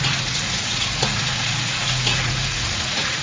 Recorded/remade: remade